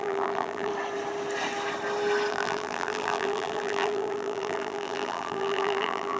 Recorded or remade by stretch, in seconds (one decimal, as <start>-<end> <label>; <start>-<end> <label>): 0.0-0.7 remade; 0.7-2.3 recorded; 2.3-6.2 remade